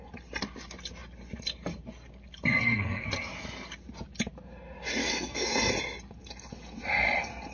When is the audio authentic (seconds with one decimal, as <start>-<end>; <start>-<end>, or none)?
0.0-2.6; 3.1-5.0; 5.7-7.5

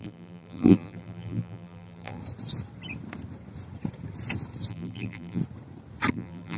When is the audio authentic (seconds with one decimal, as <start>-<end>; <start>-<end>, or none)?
2.2-4.7; 5.4-6.1

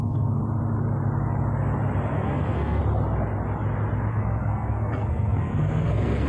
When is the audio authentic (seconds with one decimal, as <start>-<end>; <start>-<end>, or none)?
0.4-2.1; 2.8-4.1

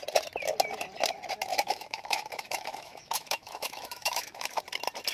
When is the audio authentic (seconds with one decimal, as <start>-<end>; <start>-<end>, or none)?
0.0-1.5; 4.6-5.1

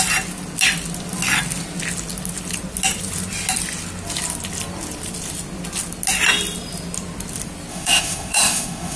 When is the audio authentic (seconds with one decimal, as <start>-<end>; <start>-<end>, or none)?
0.0-7.7

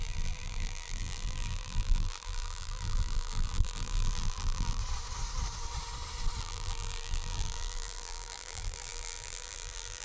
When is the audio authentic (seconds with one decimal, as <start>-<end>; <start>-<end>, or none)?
4.8-6.4

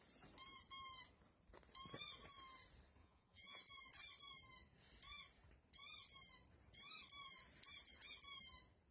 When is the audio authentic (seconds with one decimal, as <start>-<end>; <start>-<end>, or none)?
0.0-3.0; 3.6-8.9